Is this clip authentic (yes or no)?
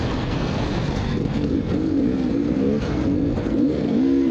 no